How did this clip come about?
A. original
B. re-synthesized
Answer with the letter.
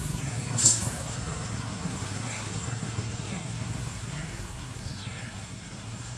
B